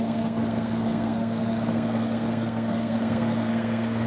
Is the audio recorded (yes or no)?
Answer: no